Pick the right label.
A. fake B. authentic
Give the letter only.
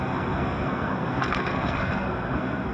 A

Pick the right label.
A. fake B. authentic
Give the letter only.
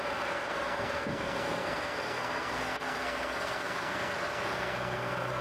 A